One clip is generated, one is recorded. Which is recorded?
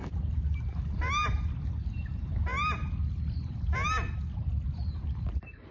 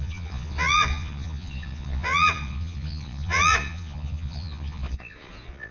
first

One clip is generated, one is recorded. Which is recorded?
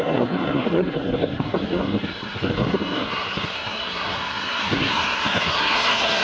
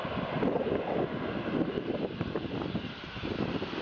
second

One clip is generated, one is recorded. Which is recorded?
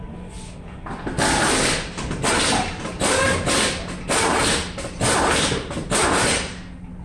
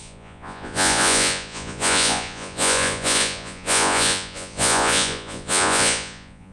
first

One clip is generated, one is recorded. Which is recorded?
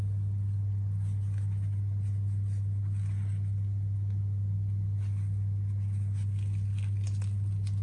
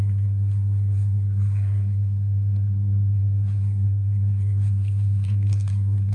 first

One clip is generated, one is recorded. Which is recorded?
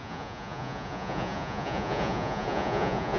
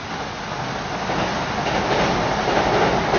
second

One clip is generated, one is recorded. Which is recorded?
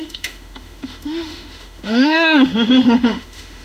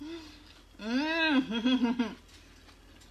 second